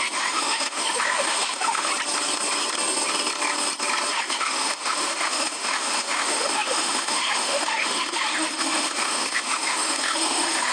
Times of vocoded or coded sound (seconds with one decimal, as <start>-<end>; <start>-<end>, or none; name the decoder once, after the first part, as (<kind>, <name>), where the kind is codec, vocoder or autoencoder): 0.0-1.9 (autoencoder, DAC-VAE); 4.1-10.7